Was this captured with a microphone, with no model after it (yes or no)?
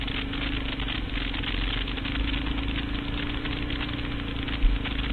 yes